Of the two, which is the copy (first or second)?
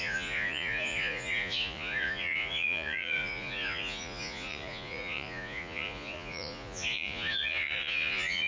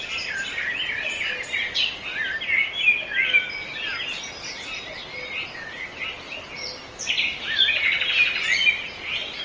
first